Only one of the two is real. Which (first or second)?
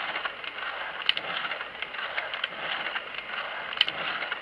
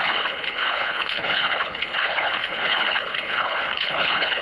first